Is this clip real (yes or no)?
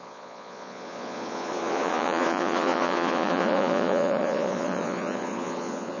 no